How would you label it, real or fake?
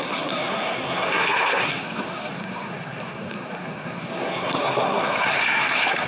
fake